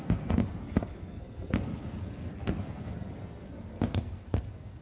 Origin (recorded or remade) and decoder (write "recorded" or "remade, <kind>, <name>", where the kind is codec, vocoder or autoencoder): remade, codec, SNAC